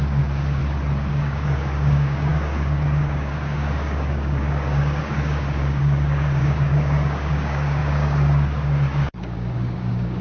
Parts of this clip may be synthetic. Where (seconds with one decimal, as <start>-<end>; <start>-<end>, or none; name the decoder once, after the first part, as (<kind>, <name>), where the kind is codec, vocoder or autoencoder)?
0.0-0.6 (codec, DAC); 1.1-10.2